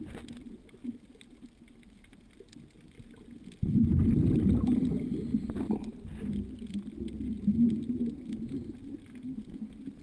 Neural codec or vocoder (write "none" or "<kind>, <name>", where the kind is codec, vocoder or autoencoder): none